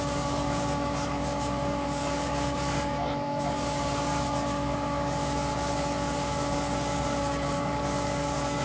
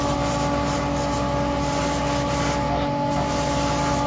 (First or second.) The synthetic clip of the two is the first